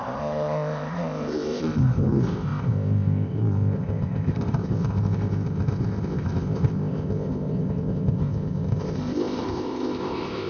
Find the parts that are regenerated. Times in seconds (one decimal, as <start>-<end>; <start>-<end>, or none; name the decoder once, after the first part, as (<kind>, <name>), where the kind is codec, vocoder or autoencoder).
0.0-10.5 (codec, ZipCodec)